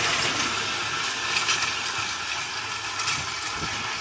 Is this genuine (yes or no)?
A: yes